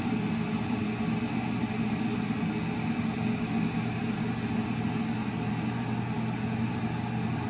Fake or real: real